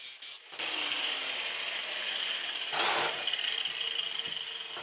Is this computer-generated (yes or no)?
no